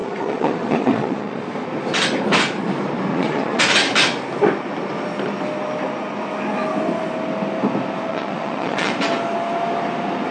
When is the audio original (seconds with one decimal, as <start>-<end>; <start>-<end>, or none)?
1.4-3.1; 3.6-8.1; 8.9-10.3